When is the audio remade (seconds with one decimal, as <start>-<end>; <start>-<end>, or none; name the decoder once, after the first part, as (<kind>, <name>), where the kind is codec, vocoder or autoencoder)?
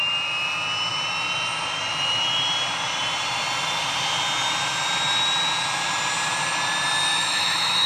7.1-7.9 (autoencoder, DAC-VAE)